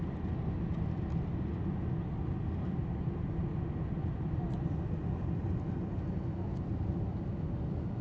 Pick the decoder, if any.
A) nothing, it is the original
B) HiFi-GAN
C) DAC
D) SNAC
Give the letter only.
A